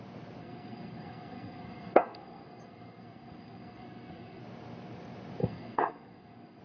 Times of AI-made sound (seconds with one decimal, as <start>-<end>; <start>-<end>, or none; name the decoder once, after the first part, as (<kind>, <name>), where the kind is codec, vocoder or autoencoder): 0.4-4.4 (codec, SNAC); 5.4-6.6

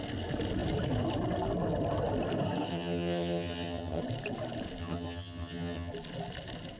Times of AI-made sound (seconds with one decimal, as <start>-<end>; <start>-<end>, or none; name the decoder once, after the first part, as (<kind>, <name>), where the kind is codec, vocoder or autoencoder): 2.7-4.0 (vocoder, HiFi-GAN); 4.8-5.9

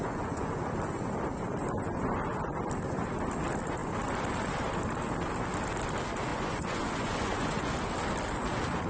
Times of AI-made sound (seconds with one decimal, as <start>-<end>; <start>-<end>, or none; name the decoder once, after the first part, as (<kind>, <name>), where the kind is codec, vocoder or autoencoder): 0.0-0.7 (vocoder, Vocos); 6.3-7.7

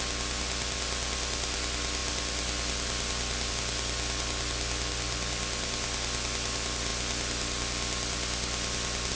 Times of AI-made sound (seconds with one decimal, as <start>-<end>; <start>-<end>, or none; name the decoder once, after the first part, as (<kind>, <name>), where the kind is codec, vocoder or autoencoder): none

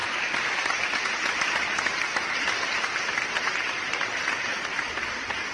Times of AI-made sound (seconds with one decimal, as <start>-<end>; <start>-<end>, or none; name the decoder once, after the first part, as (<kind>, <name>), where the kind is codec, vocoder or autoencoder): 3.3-5.5 (vocoder, BigVGAN v2)